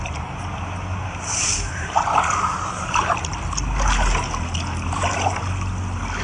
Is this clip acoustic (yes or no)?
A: yes